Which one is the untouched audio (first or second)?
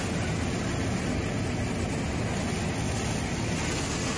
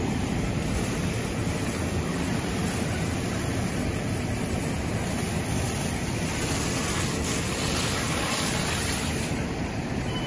first